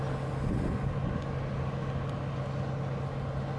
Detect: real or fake real